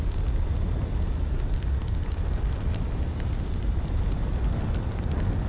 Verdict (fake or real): real